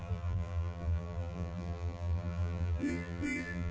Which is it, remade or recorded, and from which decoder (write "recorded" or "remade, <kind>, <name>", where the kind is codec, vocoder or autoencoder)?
remade, vocoder, BigVGAN v2